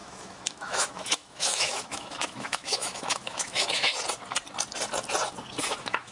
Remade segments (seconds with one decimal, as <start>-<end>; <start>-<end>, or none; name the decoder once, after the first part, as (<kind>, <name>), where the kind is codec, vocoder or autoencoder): 0.0-3.9 (autoencoder, DAC-VAE); 5.6-6.1